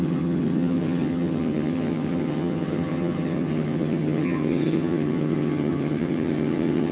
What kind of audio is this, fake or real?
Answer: fake